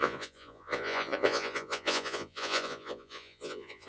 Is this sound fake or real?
fake